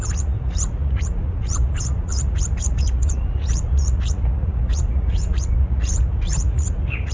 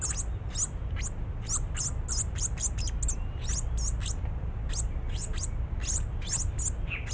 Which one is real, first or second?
second